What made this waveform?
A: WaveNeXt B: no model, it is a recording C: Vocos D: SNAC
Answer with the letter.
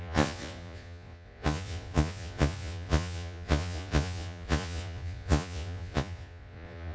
C